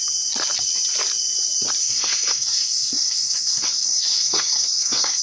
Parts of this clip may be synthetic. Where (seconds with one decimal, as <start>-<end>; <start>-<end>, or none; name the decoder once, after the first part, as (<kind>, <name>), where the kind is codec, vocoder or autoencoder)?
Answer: 1.8-5.2 (codec, SNAC)